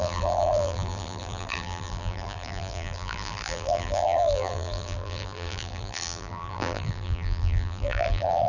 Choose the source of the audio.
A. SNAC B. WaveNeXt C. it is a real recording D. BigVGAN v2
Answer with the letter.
D